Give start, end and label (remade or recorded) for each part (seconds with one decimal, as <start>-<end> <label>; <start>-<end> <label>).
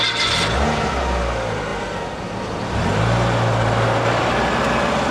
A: 0.0-5.1 recorded